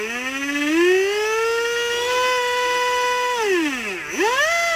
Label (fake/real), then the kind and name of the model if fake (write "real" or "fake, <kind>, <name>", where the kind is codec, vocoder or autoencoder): real